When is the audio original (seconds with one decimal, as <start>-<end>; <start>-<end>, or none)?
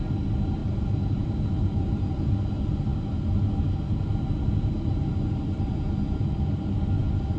0.0-0.6; 2.0-7.4